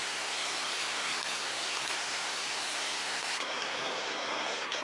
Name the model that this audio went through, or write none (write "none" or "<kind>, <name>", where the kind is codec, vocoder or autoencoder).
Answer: codec, SNAC